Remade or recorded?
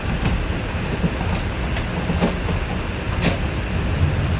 recorded